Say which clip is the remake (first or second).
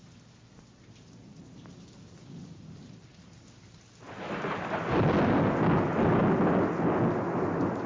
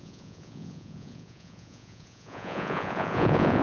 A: second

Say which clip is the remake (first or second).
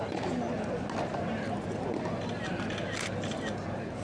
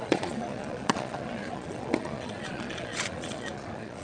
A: second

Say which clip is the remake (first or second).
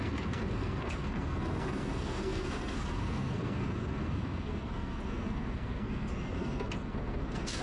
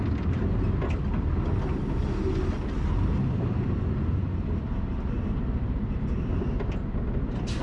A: first